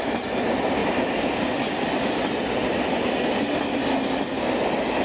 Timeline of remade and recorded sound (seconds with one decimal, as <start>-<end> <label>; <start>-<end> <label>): 0.0-5.0 recorded